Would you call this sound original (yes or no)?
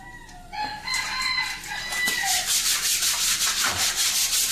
yes